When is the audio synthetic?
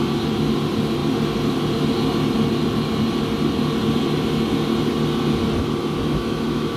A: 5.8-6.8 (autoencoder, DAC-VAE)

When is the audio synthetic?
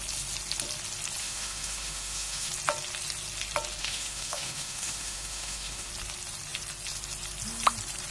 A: 1.2-2.5 (autoencoder, DAC-VAE); 3.8-5.9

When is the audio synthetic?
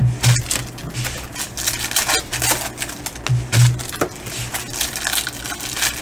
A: none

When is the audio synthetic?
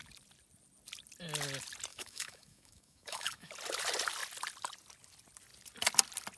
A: 1.9-3.5 (autoencoder, DAC-VAE)